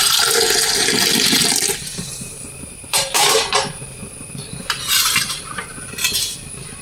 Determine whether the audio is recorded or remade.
remade